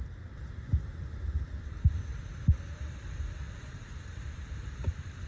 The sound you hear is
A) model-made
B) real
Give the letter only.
A